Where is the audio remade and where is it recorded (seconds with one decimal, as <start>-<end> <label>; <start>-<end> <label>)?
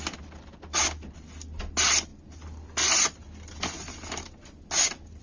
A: 0.0-5.2 recorded